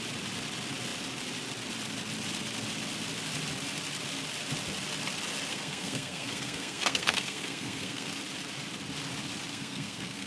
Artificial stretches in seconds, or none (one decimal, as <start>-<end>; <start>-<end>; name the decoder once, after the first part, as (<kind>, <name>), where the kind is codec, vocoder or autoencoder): 5.5-8.1 (codec, SNAC); 9.5-10.3